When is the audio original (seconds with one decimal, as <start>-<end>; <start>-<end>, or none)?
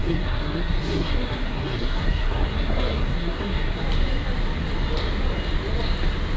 3.8-6.4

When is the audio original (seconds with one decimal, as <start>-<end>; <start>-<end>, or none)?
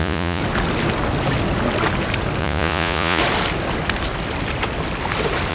0.4-2.4; 3.2-5.5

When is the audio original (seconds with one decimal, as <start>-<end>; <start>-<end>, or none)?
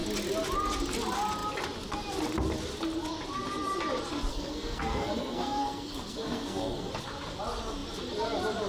0.0-4.3; 6.9-8.7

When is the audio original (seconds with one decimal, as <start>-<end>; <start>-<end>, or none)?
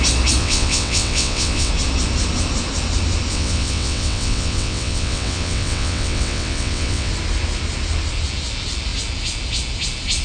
0.0-0.4; 1.7-3.3; 7.1-10.2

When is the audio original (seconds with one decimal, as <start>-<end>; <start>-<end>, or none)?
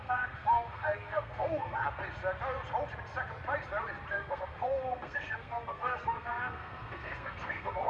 2.0-4.1